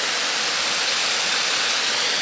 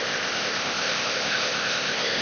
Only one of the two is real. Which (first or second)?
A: first